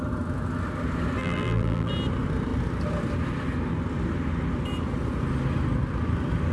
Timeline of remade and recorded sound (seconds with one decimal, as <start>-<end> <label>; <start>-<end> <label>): 0.0-1.2 recorded; 1.2-1.9 remade; 1.9-6.5 recorded